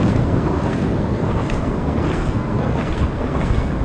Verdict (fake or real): fake